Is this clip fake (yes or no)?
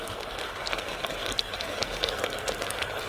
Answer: yes